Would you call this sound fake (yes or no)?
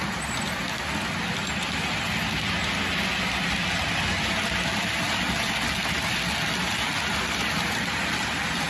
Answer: no